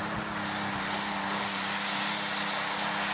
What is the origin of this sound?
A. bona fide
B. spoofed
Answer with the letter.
A